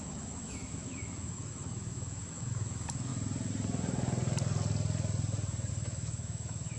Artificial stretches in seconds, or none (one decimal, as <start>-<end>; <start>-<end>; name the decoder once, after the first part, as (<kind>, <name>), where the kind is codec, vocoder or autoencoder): 0.0-3.1 (autoencoder, DAC-VAE); 5.7-6.8